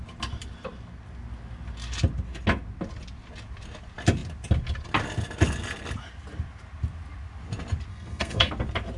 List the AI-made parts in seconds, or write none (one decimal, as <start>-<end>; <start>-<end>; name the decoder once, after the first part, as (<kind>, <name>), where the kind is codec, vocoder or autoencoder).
7.9-8.5 (codec, SNAC)